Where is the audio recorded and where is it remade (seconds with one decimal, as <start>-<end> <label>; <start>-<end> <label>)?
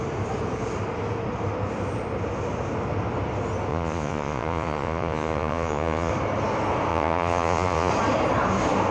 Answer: 0.0-3.7 recorded; 3.7-6.1 remade; 6.1-6.9 recorded; 6.9-7.9 remade; 7.9-8.9 recorded